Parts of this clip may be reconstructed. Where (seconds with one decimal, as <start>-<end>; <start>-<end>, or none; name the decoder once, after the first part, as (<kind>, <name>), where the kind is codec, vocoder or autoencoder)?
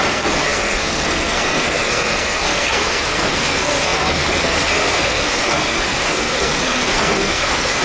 0.0-7.8 (codec, SNAC)